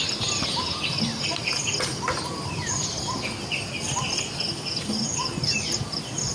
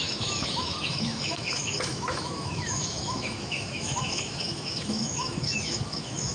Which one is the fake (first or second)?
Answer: second